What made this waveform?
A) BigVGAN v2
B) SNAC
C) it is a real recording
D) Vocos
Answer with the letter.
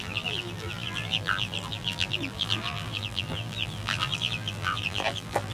A